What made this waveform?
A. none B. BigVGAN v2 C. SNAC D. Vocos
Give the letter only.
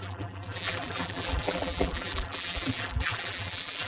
B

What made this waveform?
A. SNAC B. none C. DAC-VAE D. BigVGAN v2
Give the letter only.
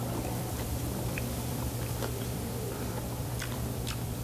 D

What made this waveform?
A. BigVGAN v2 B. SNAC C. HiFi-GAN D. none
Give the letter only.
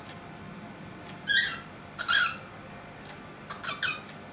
D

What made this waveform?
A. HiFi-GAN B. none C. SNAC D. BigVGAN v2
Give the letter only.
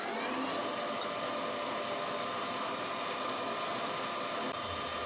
B